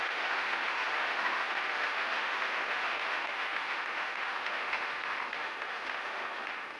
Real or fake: fake